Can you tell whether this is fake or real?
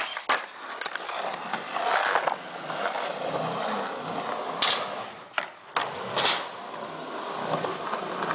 real